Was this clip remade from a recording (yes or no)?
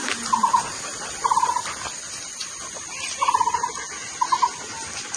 no